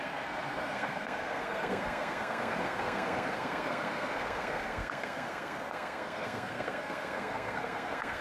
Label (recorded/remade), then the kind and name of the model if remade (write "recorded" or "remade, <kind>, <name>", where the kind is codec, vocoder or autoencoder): remade, codec, SNAC